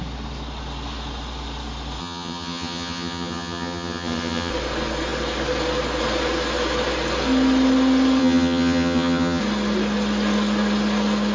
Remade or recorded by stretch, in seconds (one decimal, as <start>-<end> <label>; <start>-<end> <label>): 0.0-2.0 recorded; 2.0-4.5 remade; 4.5-8.2 recorded; 8.2-9.4 remade; 9.4-11.3 recorded